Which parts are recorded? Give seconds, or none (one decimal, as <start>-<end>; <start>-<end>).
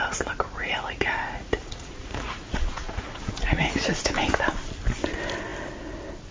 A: 0.0-0.6; 4.0-6.3